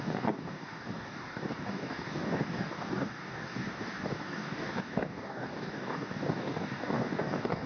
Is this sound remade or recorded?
remade